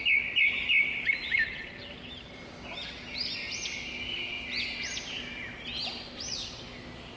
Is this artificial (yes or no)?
no